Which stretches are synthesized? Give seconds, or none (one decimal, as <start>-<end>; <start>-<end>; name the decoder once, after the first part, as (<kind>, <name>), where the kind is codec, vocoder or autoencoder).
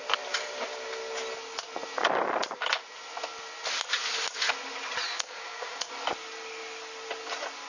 5.1-5.9 (codec, DAC)